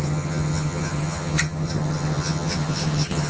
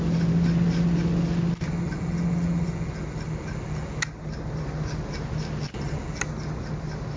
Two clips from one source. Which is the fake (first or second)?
first